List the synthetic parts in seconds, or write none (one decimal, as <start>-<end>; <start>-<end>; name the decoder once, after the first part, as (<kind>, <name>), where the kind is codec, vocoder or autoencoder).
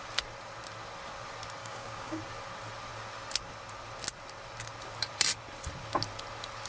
1.6-2.2 (codec, DAC)